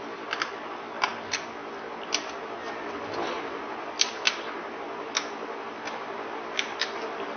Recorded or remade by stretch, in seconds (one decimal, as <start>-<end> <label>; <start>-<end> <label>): 0.0-7.4 recorded